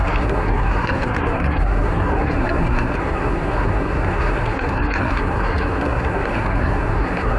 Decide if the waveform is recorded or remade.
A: remade